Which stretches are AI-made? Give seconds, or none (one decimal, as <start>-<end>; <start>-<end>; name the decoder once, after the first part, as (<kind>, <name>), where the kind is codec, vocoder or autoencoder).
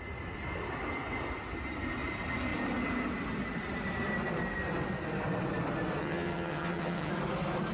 6.0-7.1 (vocoder, HiFi-GAN)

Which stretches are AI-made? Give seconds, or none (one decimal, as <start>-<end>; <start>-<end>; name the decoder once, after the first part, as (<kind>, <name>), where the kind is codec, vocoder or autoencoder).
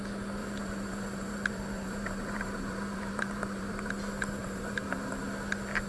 0.4-3.9 (vocoder, BigVGAN v2); 4.4-5.2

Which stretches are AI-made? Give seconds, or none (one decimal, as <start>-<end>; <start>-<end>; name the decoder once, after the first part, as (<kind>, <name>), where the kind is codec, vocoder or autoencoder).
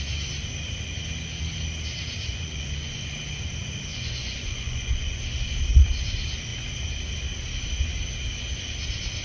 2.3-3.1 (vocoder, Vocos); 3.9-5.2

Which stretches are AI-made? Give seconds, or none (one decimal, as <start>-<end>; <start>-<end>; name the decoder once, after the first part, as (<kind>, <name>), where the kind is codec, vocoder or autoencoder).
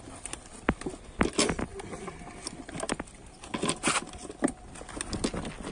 none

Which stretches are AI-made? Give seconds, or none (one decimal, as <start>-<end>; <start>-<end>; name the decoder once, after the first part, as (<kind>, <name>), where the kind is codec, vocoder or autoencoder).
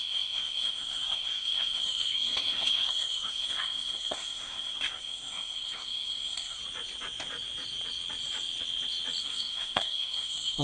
0.0-6.6 (codec, SNAC); 9.2-10.6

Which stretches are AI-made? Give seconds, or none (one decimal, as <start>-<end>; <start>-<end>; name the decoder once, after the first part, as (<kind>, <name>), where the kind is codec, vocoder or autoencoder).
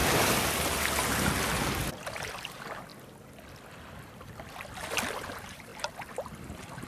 1.9-2.9 (vocoder, BigVGAN v2); 5.2-5.7; 6.4-6.9